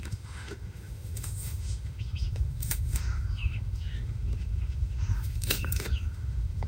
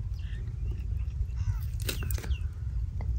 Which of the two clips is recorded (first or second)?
second